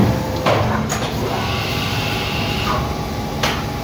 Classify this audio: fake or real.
real